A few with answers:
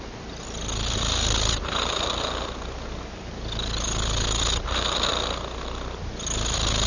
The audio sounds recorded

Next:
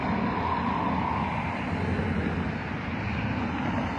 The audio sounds recorded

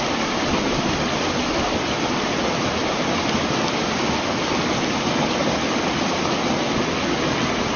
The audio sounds recorded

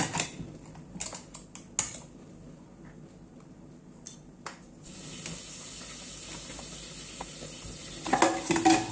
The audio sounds recorded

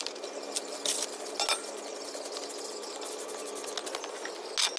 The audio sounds recorded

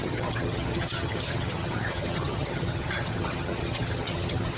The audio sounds remade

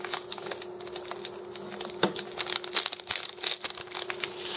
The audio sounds recorded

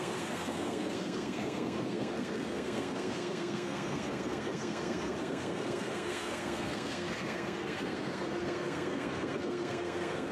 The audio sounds remade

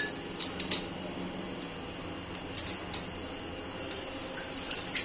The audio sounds recorded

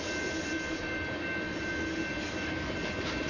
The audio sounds recorded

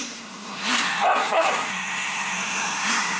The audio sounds remade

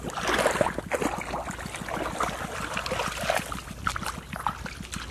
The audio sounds recorded